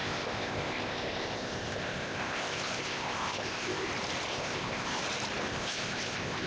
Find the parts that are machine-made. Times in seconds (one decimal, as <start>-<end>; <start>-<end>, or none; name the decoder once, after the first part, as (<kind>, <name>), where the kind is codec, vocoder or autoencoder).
0.0-3.9 (codec, ZipCodec); 4.3-5.0; 5.5-6.5